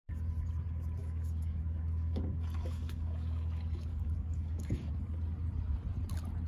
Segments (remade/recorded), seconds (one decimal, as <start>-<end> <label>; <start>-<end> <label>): 0.0-1.0 recorded; 1.0-4.9 remade; 4.9-6.5 recorded